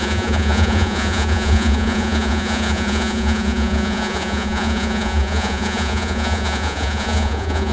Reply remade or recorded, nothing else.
remade